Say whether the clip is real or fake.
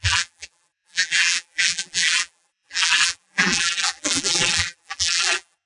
fake